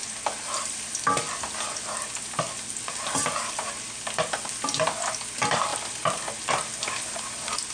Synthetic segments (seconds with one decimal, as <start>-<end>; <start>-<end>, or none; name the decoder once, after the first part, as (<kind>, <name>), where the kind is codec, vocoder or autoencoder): 5.7-6.4 (vocoder, BigVGAN v2)